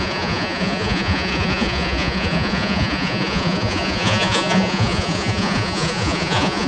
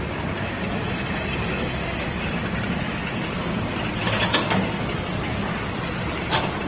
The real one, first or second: second